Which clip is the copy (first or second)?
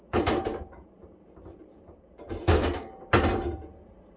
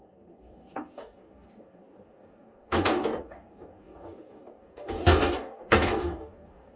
second